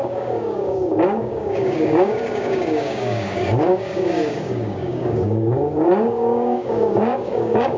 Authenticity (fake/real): fake